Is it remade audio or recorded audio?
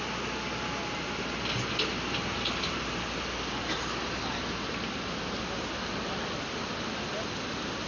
recorded